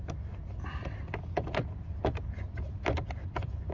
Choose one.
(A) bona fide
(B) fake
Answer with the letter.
A